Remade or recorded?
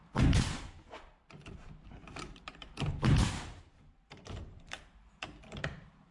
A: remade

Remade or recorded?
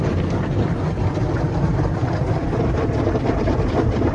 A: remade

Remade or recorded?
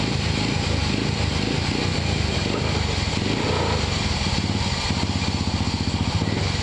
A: recorded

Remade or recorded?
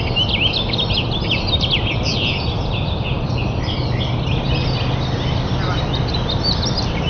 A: recorded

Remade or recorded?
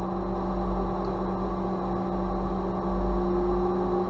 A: recorded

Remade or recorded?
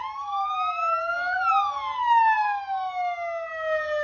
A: recorded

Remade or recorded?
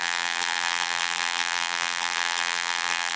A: remade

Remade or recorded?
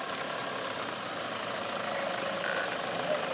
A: recorded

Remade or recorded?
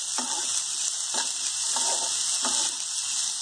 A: recorded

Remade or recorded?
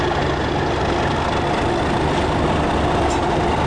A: recorded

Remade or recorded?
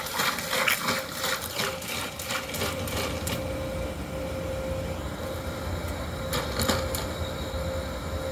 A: recorded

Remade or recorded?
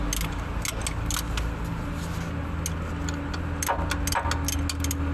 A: recorded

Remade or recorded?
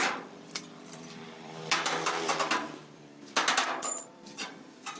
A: remade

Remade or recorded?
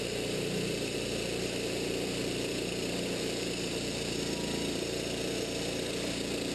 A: remade